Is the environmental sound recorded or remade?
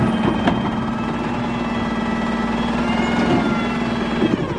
recorded